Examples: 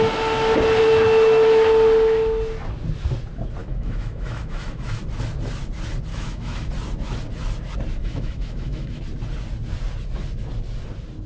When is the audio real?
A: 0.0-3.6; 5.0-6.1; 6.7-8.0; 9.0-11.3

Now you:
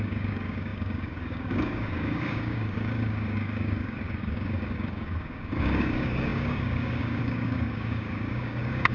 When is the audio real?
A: none